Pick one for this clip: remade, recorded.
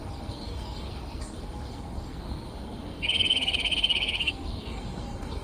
remade